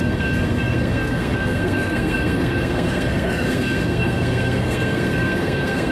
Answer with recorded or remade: remade